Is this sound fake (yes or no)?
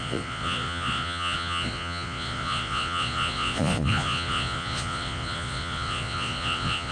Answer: yes